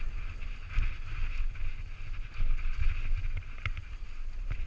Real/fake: real